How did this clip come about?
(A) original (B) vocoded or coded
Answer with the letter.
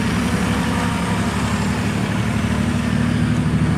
A